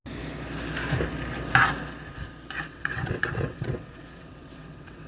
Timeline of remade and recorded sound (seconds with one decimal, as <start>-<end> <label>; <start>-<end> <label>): 0.0-2.7 recorded; 2.7-5.1 remade